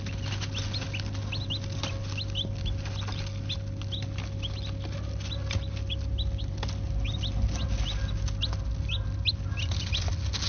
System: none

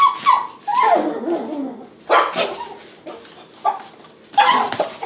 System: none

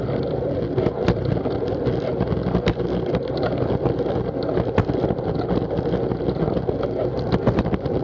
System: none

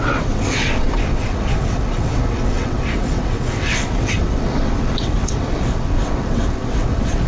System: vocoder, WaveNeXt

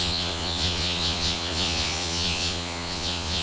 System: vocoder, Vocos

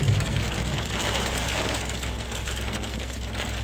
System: codec, SNAC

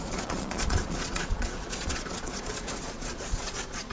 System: vocoder, Vocos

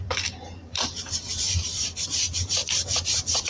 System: vocoder, BigVGAN v2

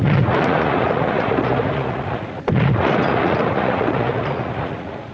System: vocoder, Vocos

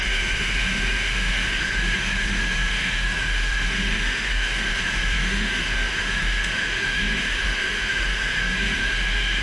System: autoencoder, DAC-VAE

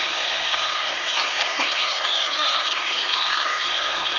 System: codec, SNAC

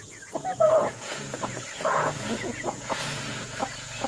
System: vocoder, Vocos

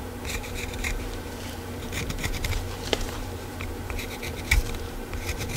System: vocoder, BigVGAN v2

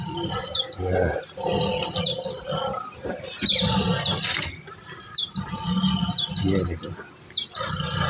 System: none